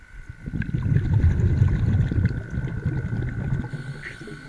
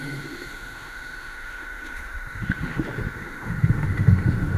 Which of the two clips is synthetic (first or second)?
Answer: second